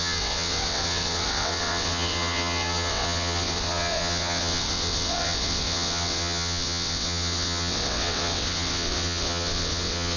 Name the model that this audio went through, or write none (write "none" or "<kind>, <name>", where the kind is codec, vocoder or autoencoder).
vocoder, WaveNeXt